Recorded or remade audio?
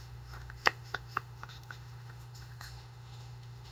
remade